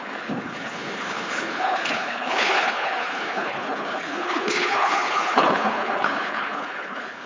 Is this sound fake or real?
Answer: fake